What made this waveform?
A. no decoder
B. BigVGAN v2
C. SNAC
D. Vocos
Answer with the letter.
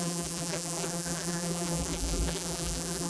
B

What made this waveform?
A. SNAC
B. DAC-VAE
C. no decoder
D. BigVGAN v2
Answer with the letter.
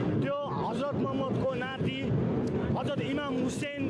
C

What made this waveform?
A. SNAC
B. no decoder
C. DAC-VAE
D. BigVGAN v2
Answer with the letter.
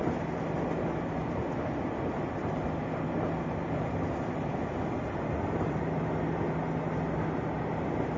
B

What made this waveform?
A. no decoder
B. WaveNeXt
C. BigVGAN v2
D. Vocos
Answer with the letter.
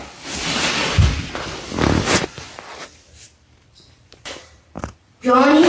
C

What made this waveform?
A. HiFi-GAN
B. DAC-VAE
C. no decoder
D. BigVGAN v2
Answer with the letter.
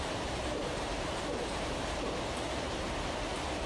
D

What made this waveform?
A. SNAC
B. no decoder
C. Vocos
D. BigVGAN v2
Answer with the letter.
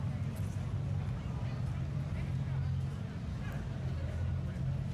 B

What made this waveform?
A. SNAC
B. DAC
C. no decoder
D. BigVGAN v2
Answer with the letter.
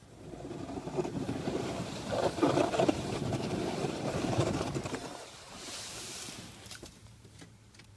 D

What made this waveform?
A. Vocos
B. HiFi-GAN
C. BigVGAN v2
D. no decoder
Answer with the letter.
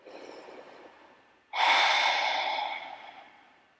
C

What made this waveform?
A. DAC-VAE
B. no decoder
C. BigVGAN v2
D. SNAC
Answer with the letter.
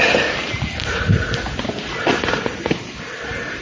B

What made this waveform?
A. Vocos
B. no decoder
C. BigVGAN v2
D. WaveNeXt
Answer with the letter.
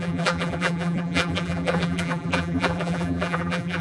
C